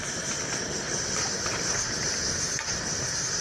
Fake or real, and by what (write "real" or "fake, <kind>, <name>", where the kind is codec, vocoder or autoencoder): fake, vocoder, BigVGAN v2